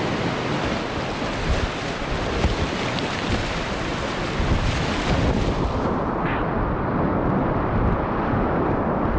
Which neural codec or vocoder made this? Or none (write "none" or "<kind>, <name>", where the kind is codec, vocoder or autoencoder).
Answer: none